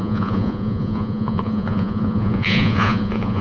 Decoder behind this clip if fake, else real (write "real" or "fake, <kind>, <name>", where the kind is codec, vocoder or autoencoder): fake, vocoder, Vocos